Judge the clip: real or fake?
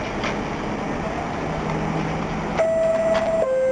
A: real